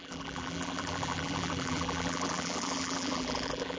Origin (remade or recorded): remade